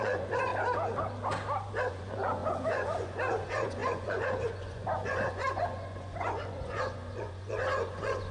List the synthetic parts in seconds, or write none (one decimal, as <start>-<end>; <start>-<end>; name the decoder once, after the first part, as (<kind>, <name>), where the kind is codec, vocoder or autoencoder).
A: 0.0-0.5 (vocoder, Vocos); 1.9-8.3